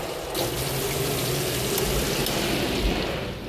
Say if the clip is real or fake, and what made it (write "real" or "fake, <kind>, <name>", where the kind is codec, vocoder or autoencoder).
real